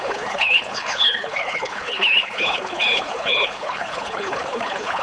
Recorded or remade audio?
remade